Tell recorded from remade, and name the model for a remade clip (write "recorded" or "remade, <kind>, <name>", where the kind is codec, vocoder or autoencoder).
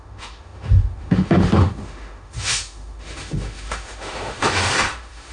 remade, autoencoder, DAC-VAE